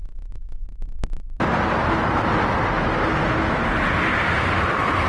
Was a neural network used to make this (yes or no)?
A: no